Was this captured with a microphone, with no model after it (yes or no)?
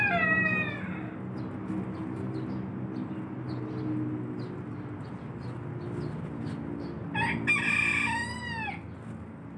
yes